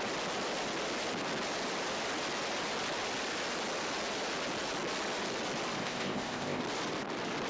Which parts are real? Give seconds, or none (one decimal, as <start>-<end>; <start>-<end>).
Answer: 0.0-5.8; 6.6-7.5